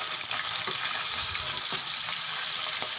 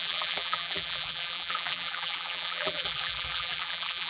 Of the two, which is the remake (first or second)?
second